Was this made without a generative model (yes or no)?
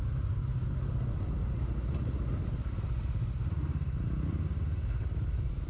yes